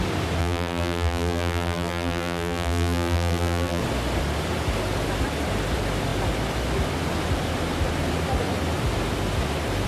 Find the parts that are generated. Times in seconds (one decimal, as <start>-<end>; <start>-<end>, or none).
0.4-3.8